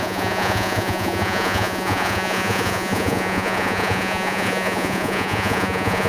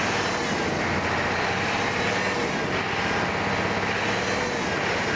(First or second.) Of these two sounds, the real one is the second